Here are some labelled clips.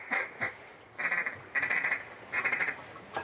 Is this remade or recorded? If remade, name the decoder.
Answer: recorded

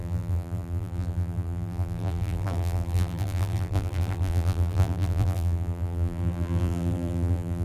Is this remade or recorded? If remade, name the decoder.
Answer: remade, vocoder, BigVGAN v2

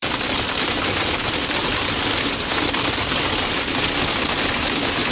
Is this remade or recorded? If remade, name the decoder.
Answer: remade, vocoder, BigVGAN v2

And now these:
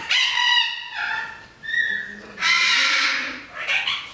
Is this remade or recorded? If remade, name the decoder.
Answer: recorded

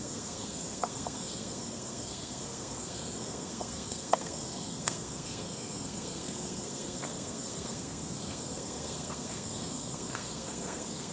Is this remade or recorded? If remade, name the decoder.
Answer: remade, codec, SNAC